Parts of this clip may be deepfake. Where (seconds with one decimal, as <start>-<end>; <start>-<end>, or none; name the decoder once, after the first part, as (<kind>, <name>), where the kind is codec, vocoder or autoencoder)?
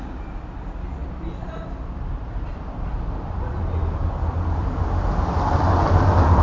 1.0-4.8 (vocoder, BigVGAN v2)